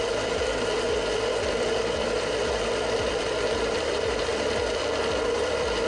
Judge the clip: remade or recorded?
remade